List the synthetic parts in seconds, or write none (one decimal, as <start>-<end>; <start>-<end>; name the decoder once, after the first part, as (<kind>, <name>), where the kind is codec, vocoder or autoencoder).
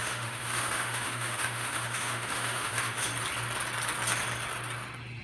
0.0-3.1 (autoencoder, DAC-VAE)